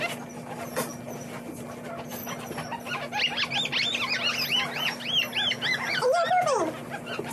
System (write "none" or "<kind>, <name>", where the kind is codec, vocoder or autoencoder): none